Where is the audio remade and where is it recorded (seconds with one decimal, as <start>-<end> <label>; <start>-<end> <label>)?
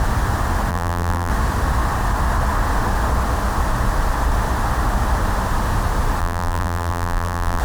0.0-0.7 recorded; 0.7-1.3 remade; 1.3-6.2 recorded; 6.2-7.6 remade